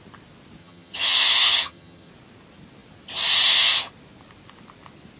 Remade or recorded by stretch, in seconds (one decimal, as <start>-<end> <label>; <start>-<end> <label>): 0.0-0.6 recorded; 0.6-2.1 remade; 2.1-5.2 recorded